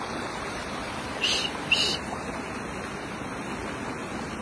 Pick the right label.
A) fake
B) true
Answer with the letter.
A